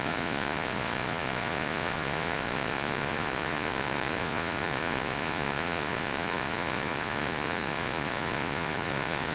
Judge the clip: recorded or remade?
remade